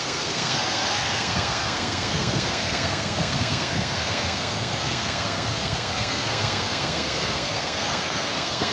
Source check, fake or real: fake